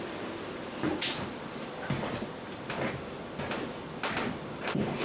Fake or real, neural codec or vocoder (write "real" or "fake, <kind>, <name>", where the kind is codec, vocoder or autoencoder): real